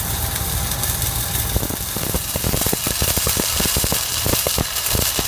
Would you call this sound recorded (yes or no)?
no